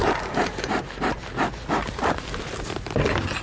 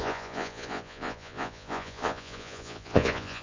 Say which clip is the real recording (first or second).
first